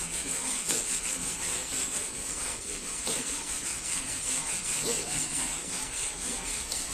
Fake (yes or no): yes